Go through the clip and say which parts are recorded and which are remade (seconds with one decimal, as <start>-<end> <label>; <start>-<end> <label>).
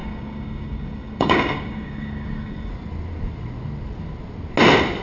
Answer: 0.0-2.7 remade; 2.7-5.0 recorded